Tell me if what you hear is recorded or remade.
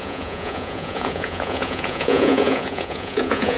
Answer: remade